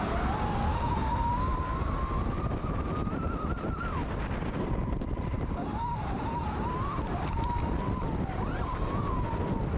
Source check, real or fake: real